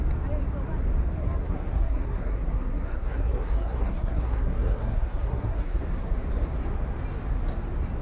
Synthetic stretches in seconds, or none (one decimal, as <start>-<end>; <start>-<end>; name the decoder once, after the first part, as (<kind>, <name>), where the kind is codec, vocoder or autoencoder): 1.2-5.8 (codec, SNAC)